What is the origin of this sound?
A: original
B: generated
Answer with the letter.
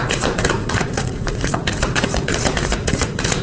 B